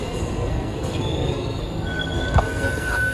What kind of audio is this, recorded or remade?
remade